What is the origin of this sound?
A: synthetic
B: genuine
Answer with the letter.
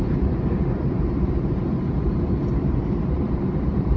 A